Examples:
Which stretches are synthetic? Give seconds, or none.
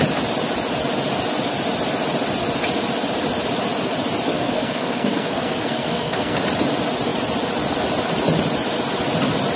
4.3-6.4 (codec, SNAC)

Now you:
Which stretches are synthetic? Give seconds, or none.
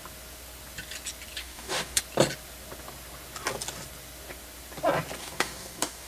1.4-2.0 (codec, DAC); 5.2-6.1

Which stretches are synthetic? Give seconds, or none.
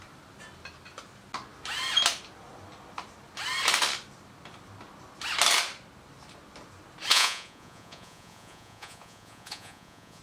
7.1-10.2 (vocoder, Vocos)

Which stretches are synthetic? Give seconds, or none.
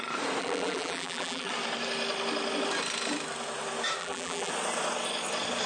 0.4-1.5 (vocoder, BigVGAN v2); 4.0-4.5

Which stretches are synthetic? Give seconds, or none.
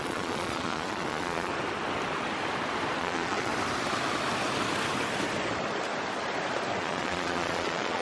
0.0-1.5 (vocoder, Vocos); 3.0-3.5; 6.8-8.0